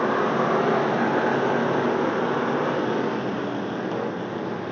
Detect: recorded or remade recorded